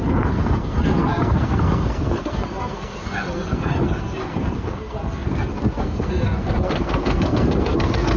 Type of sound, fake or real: fake